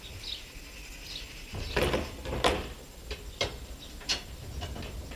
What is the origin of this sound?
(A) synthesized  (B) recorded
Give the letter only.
B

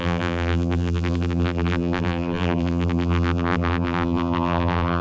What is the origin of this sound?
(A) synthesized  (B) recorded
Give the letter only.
A